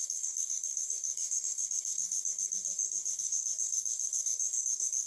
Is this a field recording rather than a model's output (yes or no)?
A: no